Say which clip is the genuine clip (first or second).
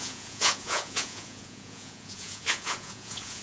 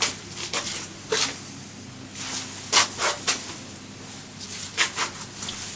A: second